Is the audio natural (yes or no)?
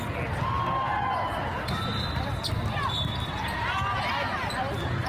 yes